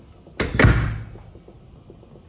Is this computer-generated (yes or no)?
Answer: no